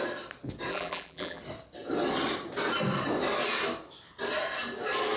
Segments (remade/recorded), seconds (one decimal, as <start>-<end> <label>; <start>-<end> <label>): 0.0-0.7 recorded; 0.7-1.4 remade; 1.4-5.2 recorded